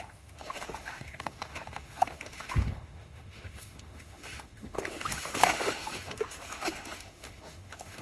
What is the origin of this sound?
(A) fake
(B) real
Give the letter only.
A